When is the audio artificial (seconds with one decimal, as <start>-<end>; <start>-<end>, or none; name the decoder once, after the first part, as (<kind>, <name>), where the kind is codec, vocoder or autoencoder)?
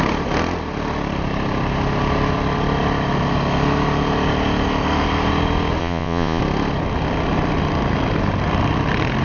5.8-6.4 (vocoder, Vocos)